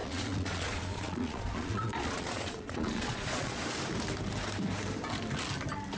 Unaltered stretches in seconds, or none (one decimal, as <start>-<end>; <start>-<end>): 3.6-6.0